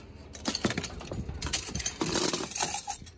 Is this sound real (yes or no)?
yes